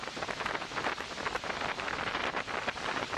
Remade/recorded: remade